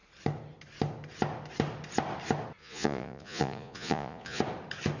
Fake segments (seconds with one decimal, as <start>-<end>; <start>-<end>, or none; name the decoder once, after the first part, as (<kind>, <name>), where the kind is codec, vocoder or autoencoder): 2.6-4.4 (vocoder, Vocos)